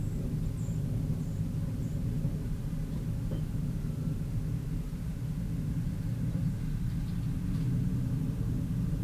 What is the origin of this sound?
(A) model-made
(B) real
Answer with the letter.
B